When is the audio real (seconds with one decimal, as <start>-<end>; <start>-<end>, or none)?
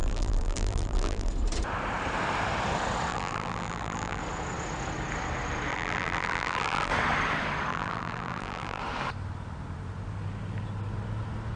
1.3-3.1; 4.2-5.7; 6.9-7.7; 8.8-11.6